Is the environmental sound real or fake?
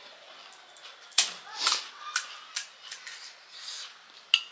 real